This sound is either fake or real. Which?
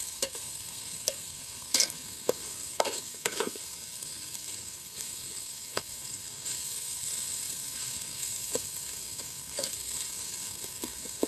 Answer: fake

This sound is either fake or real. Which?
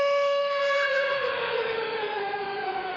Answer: fake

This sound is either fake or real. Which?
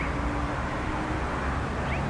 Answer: real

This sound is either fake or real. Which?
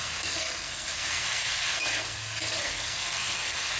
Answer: fake